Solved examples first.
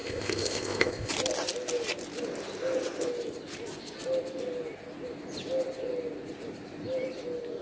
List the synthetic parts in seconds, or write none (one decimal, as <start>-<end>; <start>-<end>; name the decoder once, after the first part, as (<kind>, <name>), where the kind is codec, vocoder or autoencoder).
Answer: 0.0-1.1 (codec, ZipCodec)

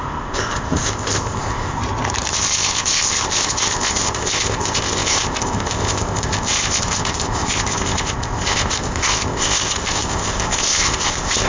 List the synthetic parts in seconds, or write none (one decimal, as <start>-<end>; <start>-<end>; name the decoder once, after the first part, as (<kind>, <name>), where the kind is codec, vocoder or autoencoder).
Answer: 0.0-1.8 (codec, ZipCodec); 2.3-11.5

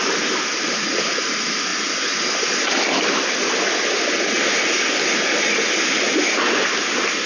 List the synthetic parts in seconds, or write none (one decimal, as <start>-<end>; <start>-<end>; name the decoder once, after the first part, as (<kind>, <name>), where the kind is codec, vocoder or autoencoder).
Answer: none

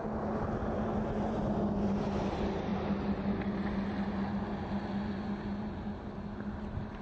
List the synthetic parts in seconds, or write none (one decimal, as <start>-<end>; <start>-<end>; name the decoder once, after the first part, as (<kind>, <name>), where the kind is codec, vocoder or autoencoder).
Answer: none